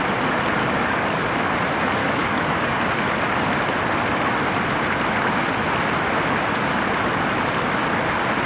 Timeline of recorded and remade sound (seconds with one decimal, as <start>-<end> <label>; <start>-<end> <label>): 0.0-0.6 recorded; 0.6-1.3 remade; 1.3-2.0 recorded; 2.0-2.8 remade; 2.8-8.5 recorded